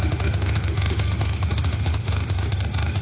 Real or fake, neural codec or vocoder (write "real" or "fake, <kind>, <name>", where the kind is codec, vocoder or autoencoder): fake, autoencoder, DAC-VAE